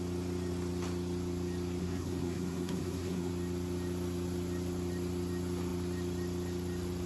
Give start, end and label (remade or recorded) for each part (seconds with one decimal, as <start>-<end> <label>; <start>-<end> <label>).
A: 0.0-1.8 recorded; 1.8-3.3 remade; 3.3-7.1 recorded